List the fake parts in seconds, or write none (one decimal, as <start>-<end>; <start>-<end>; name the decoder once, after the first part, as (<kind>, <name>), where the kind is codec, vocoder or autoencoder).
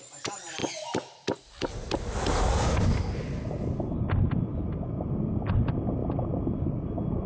none